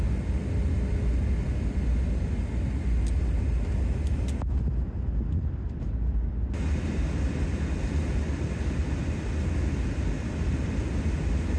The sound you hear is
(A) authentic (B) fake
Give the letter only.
A